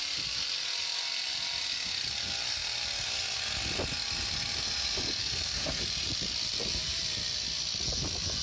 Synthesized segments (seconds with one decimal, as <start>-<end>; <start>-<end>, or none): 5.2-5.8